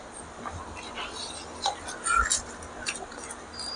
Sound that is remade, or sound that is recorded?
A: recorded